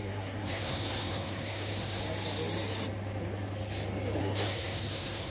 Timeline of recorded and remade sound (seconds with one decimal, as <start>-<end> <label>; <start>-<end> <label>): 0.0-2.0 remade; 2.0-4.2 recorded; 4.2-5.3 remade